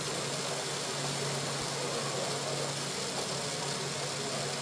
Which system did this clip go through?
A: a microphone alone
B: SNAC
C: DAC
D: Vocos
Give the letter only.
A